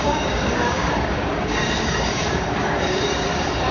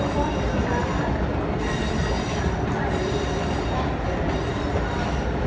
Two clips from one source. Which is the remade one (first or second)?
first